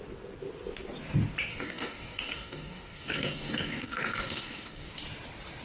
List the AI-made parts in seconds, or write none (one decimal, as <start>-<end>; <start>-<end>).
1.5-4.9

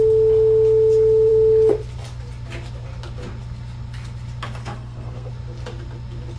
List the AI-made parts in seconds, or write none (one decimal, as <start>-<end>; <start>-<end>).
4.6-5.3